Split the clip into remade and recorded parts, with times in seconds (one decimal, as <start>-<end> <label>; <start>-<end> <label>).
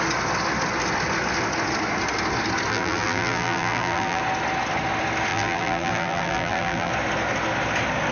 0.0-2.7 recorded; 2.7-4.2 remade; 4.2-5.3 recorded; 5.3-6.9 remade; 6.9-8.1 recorded